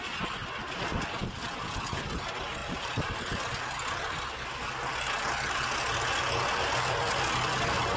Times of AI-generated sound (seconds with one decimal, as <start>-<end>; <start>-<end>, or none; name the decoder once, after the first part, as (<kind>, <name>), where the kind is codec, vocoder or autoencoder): 2.6-3.2 (vocoder, BigVGAN v2)